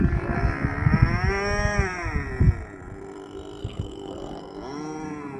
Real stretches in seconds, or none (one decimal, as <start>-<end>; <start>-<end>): 0.0-3.6; 4.4-5.4